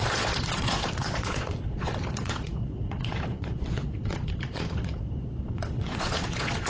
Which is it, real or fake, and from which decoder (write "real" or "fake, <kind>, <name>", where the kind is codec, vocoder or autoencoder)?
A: fake, vocoder, Vocos